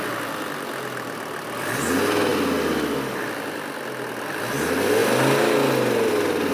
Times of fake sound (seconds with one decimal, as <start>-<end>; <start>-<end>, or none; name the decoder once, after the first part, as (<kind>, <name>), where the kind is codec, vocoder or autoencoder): none